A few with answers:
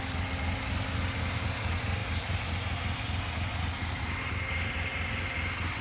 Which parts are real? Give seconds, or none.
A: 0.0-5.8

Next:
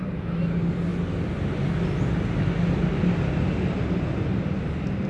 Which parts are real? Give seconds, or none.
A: 0.0-5.1

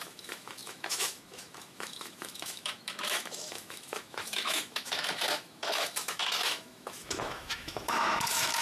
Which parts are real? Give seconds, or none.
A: none

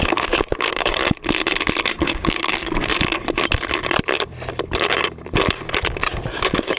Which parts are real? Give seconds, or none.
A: 1.0-2.0; 2.9-6.3

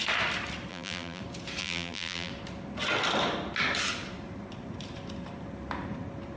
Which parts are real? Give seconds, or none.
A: 0.0-0.7; 1.2-1.6; 2.3-6.4

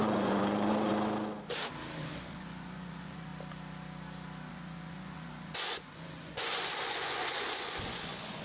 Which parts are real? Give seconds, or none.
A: 0.9-2.0; 3.3-4.5

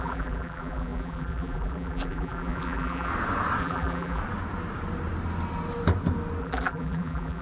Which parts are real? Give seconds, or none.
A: 3.1-3.6; 4.2-6.4

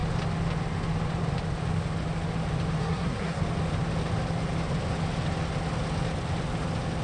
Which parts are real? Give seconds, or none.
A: 0.0-2.8; 3.4-7.0